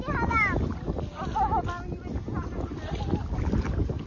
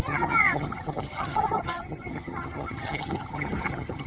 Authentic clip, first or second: first